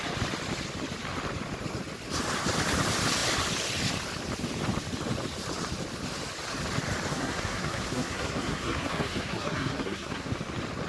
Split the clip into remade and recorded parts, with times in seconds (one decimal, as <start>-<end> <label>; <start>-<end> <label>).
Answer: 0.0-7.1 recorded; 7.1-10.3 remade; 10.3-10.9 recorded